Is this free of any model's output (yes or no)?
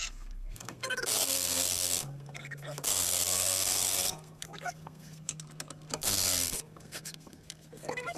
no